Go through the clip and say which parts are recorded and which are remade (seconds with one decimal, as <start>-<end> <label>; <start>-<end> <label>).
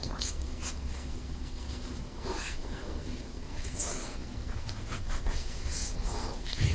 0.0-6.7 remade